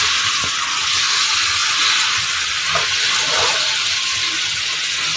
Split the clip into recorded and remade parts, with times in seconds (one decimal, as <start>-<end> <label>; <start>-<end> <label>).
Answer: 0.0-5.2 recorded